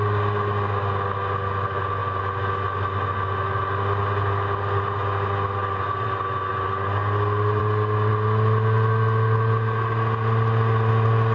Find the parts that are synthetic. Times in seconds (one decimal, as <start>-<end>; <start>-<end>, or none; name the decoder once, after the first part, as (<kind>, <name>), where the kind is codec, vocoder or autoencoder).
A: none